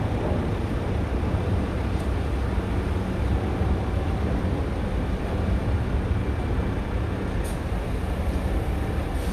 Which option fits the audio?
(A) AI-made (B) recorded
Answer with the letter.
B